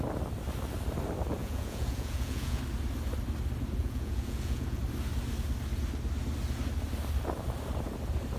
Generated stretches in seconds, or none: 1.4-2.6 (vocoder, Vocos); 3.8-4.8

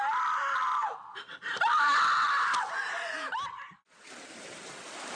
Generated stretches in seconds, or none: 1.1-4.1 (vocoder, BigVGAN v2)